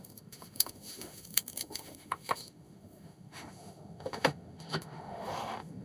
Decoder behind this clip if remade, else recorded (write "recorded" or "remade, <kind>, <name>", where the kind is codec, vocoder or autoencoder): remade, autoencoder, DAC-VAE